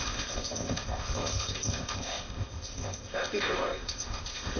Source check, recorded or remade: remade